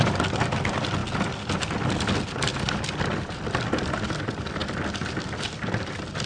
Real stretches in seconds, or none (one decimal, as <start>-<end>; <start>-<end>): 1.0-2.5; 4.6-5.4